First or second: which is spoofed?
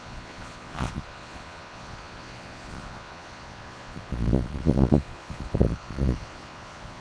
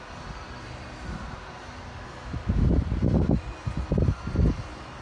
first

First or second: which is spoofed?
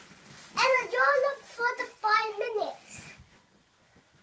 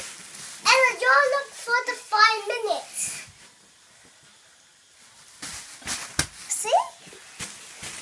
first